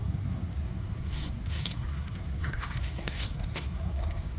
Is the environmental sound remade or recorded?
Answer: remade